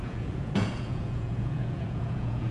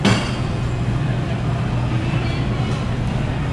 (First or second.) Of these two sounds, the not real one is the first